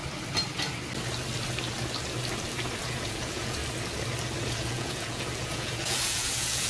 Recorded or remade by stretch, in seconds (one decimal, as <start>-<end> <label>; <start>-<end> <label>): 0.0-2.8 recorded; 2.8-3.6 remade; 3.6-4.4 recorded; 4.4-6.7 remade